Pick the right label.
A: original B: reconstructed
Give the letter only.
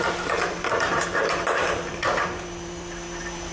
B